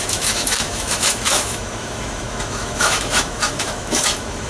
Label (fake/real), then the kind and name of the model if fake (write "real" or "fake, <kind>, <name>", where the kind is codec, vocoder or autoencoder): fake, autoencoder, DAC-VAE